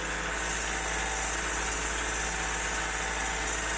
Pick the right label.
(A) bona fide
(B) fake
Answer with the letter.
A